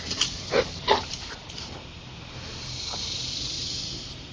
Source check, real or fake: fake